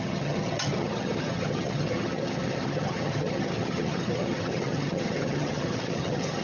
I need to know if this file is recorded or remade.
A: remade